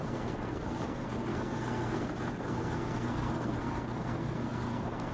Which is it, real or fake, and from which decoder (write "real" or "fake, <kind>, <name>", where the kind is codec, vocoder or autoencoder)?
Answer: fake, codec, SNAC